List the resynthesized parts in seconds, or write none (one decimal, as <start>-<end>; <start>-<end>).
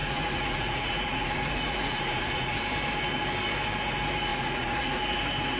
0.0-2.6; 4.3-5.0